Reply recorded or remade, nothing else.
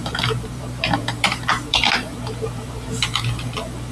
remade